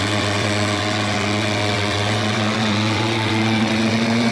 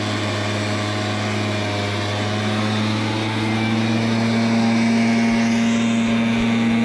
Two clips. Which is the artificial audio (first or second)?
first